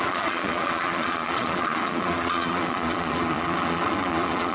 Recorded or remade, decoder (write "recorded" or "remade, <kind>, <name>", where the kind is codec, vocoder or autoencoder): remade, vocoder, Vocos